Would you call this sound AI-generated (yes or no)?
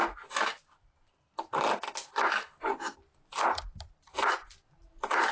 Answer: no